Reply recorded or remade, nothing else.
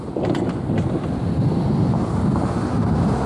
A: recorded